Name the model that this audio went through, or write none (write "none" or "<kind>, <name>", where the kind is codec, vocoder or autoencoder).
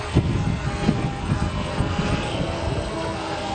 codec, SNAC